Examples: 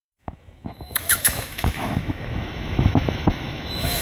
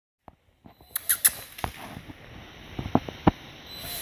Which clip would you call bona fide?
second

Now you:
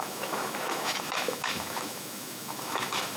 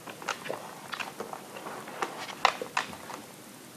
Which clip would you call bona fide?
second